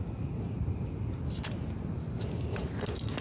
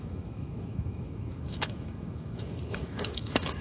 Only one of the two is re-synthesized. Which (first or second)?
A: second